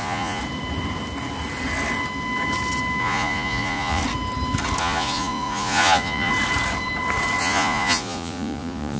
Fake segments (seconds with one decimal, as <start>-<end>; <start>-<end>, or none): 0.0-0.4; 3.0-4.0; 4.8-6.3; 7.4-9.0